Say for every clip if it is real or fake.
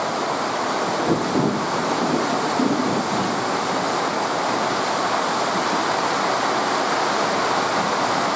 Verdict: real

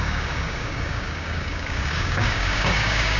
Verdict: fake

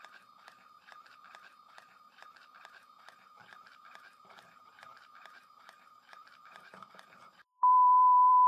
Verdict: fake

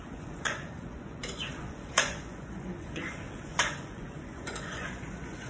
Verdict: fake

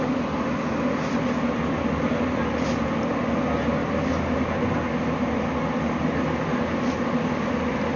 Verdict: real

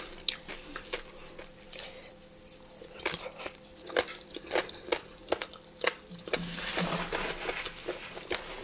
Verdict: real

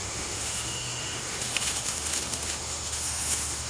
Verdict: fake